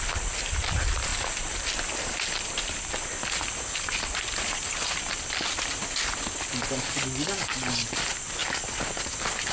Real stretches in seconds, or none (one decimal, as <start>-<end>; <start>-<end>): 0.0-9.5